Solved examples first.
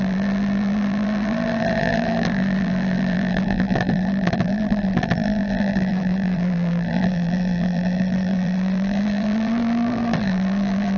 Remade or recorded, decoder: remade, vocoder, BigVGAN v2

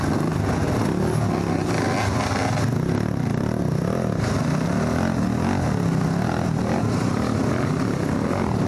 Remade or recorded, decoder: recorded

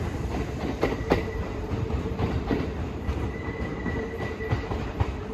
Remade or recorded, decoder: remade, vocoder, BigVGAN v2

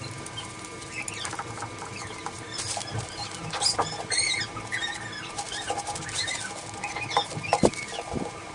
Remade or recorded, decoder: remade, vocoder, BigVGAN v2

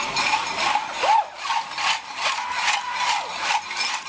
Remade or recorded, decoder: recorded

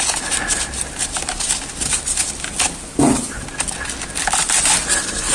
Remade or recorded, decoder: recorded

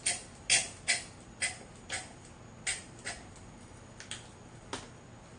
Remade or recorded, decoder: recorded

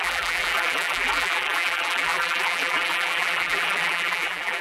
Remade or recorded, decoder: remade, vocoder, BigVGAN v2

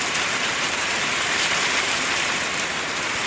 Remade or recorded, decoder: remade, vocoder, BigVGAN v2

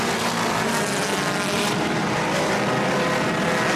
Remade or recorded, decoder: recorded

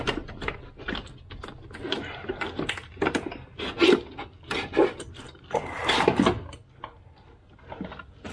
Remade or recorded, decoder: recorded